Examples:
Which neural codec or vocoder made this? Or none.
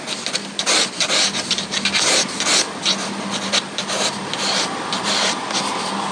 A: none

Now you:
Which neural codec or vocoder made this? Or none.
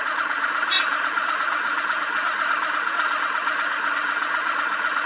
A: vocoder, Vocos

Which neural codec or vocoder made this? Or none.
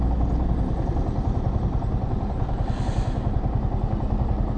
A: none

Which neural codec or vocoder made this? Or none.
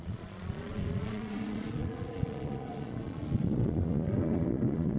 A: vocoder, Vocos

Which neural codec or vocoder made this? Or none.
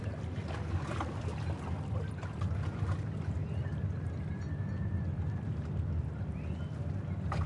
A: none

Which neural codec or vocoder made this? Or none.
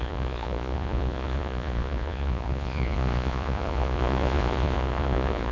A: vocoder, Vocos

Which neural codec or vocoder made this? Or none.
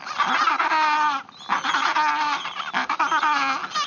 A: none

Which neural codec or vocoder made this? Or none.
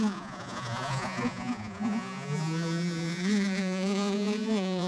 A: vocoder, Vocos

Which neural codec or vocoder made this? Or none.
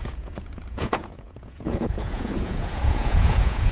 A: vocoder, Vocos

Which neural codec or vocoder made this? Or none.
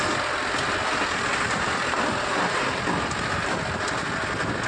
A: none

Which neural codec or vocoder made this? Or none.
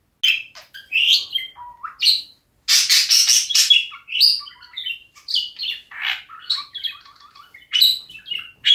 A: none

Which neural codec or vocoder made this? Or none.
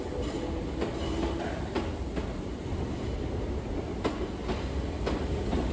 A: none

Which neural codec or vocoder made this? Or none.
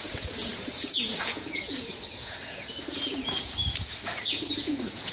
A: vocoder, Vocos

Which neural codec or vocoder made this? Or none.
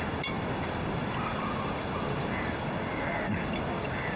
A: none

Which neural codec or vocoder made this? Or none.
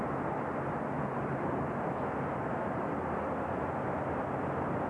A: none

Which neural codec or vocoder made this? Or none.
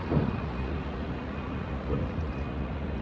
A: vocoder, Vocos